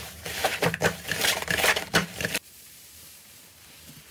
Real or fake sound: fake